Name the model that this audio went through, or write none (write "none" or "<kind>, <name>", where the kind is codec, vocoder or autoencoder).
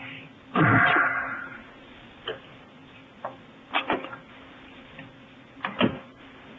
none